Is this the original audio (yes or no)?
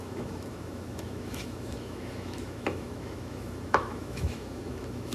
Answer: no